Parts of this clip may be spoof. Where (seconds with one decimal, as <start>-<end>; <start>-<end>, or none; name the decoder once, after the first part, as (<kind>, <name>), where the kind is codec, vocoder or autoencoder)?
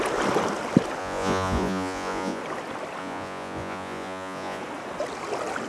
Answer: 1.0-2.4 (vocoder, Vocos); 3.0-4.6